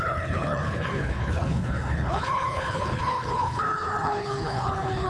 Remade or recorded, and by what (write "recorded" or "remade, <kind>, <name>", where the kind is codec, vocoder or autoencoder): remade, codec, HILCodec